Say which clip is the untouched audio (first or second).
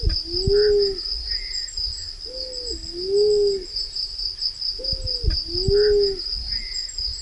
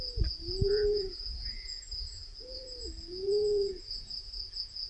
first